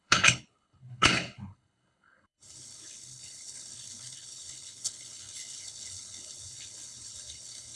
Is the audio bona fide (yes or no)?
no